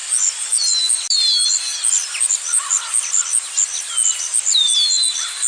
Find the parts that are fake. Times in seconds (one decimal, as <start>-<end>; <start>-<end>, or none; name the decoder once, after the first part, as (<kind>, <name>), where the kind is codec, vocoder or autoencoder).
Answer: none